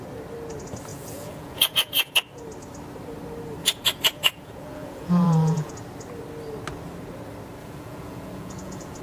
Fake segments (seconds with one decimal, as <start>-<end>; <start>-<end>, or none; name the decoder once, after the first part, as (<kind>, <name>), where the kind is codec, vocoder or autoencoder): 0.9-2.2 (vocoder, Vocos); 3.6-5.7; 7.6-9.0